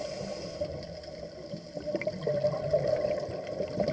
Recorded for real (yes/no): yes